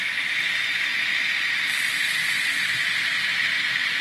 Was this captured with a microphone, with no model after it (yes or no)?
yes